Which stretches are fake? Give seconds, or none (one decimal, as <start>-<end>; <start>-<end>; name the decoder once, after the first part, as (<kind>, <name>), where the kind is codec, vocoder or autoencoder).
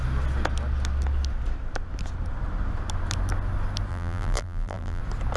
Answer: 3.9-5.0 (vocoder, BigVGAN v2)